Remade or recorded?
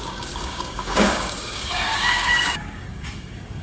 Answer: remade